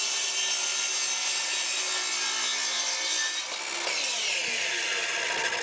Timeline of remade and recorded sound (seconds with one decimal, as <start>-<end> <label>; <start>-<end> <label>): 0.0-5.6 recorded